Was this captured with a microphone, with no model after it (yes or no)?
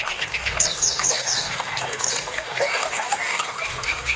no